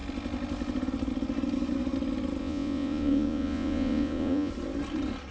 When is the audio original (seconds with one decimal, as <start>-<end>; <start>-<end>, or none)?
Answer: 0.0-2.4; 4.5-5.3